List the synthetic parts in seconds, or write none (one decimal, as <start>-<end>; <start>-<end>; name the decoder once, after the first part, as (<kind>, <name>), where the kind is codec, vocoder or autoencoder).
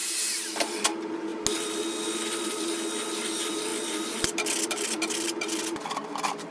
0.0-1.3 (vocoder, BigVGAN v2); 2.2-6.5